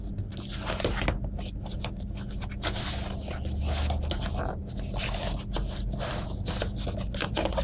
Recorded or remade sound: recorded